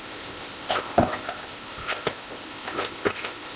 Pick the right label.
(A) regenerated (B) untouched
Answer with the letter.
A